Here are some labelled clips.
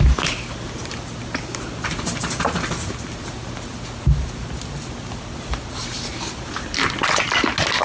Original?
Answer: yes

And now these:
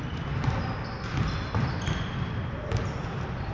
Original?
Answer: yes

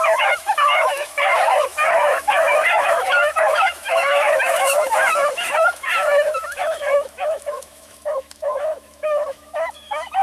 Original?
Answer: no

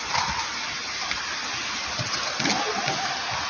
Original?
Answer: yes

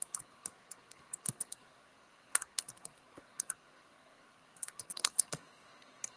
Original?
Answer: no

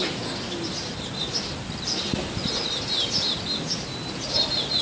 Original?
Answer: yes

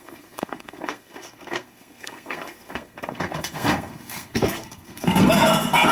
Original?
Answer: no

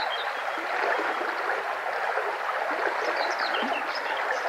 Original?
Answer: yes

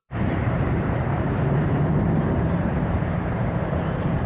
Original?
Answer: no